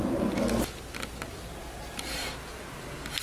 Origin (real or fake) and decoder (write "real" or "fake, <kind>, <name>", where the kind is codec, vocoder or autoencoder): real